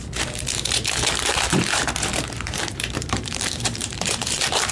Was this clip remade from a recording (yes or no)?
yes